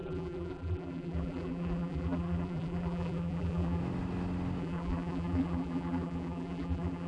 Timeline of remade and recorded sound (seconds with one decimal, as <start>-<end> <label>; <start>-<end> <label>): 0.0-3.8 remade; 3.8-4.6 recorded; 4.6-7.1 remade